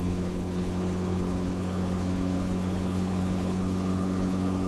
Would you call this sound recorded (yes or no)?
no